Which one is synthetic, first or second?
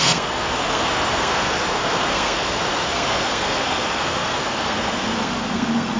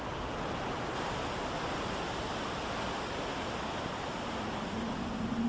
first